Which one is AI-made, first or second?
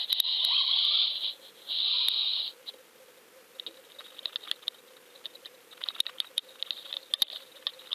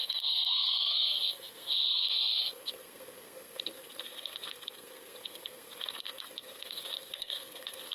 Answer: second